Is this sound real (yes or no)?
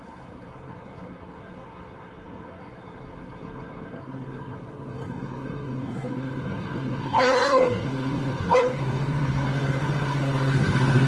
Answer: no